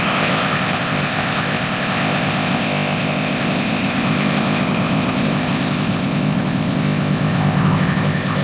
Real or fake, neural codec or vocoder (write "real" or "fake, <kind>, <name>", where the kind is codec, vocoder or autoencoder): fake, codec, ZipCodec